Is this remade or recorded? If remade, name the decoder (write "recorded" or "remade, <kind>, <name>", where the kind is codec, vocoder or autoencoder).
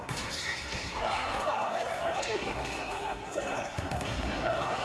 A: remade, codec, SNAC